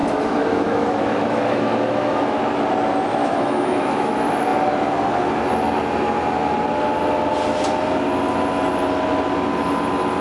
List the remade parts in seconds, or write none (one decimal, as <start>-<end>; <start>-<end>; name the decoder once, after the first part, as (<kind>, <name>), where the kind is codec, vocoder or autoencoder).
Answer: 0.0-2.4 (autoencoder, DAC-VAE); 3.2-4.1